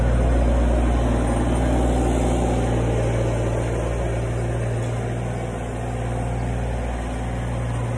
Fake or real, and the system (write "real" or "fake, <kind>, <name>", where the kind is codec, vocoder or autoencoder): real